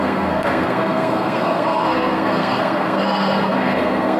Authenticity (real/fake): fake